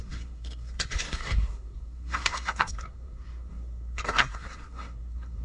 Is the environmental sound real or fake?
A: fake